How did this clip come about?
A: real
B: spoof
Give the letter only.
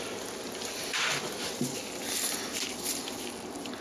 A